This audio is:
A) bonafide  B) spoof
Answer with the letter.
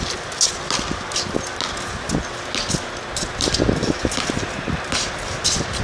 A